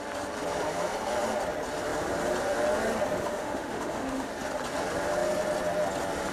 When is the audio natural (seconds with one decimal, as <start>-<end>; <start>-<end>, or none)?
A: 0.0-3.2; 4.3-6.3